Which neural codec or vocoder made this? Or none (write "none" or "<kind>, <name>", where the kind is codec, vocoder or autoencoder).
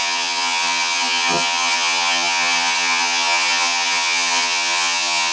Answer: vocoder, HiFi-GAN